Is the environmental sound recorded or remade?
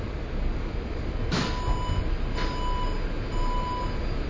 recorded